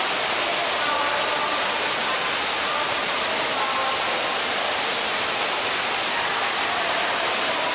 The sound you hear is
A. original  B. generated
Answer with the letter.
A